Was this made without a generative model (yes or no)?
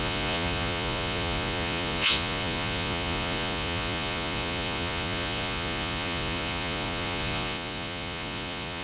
no